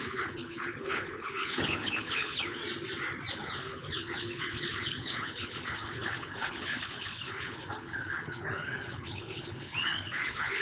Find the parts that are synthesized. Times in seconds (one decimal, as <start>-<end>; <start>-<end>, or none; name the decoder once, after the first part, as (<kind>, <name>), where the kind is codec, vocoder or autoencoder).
0.0-2.6 (codec, HILCodec); 3.3-10.6